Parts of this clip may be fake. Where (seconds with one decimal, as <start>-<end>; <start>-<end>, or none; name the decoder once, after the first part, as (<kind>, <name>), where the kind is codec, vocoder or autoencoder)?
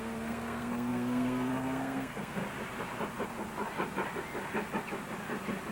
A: 0.0-2.4 (codec, SNAC)